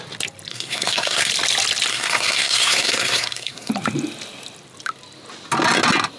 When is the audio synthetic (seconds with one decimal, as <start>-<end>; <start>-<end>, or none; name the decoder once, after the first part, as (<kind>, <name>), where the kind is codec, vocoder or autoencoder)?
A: 0.5-1.3 (codec, SNAC); 1.9-3.7